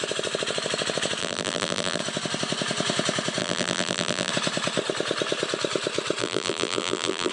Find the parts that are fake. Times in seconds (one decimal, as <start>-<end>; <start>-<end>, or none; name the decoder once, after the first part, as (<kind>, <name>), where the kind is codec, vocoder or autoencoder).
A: 1.2-2.0 (vocoder, BigVGAN v2); 3.4-4.3; 6.2-7.3